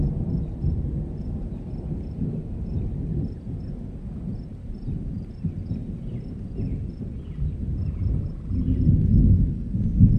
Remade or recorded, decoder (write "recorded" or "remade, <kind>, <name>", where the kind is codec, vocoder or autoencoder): recorded